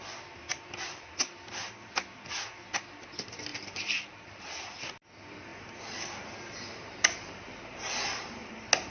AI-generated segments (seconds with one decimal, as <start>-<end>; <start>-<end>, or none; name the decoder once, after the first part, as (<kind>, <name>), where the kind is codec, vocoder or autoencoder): 0.5-1.3 (vocoder, BigVGAN v2); 3.5-4.4; 5.5-8.5

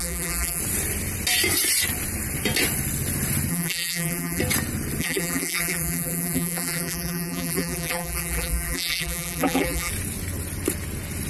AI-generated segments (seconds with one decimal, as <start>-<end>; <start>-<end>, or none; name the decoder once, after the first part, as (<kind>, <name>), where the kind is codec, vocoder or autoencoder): 0.0-0.6 (vocoder, BigVGAN v2); 3.5-4.4; 5.0-9.9

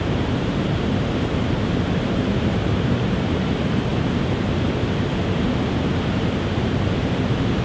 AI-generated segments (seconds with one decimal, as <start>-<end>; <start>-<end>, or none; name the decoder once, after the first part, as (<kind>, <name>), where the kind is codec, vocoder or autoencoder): 0.0-3.9 (vocoder, BigVGAN v2)

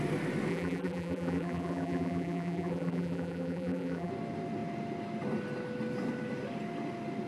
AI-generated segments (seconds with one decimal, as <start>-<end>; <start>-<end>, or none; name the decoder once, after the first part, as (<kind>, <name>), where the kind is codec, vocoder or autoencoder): 0.5-4.1 (vocoder, BigVGAN v2)

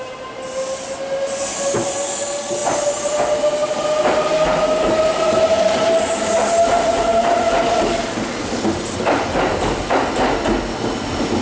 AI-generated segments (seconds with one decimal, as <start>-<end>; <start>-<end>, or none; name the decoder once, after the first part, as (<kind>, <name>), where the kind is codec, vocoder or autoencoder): 3.6-8.1 (vocoder, BigVGAN v2)

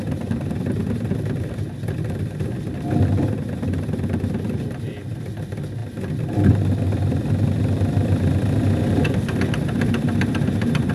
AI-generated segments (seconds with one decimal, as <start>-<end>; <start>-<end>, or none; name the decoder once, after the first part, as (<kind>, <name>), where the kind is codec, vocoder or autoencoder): none

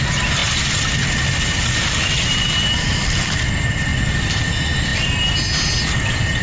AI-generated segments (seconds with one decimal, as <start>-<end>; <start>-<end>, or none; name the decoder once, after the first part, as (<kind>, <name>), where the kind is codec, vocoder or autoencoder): 0.0-3.9 (vocoder, BigVGAN v2); 4.5-4.9